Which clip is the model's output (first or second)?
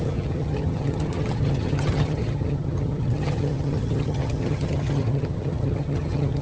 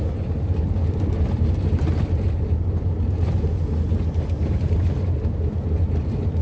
first